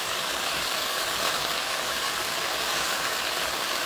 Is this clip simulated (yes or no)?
yes